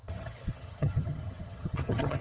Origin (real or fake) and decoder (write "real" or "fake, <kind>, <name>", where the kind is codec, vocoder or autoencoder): fake, vocoder, HiFi-GAN